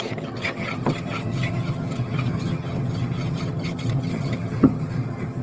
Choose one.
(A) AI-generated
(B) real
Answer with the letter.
A